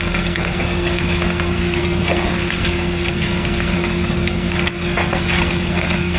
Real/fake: fake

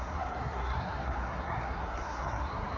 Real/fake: fake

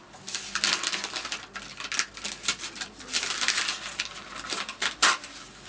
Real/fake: real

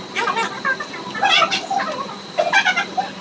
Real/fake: real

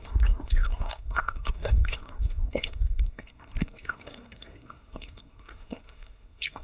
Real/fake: fake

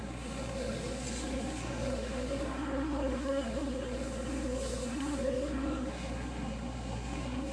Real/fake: fake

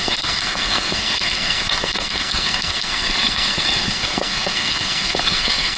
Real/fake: fake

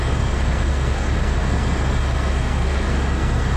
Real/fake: fake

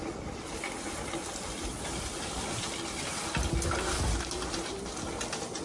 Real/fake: real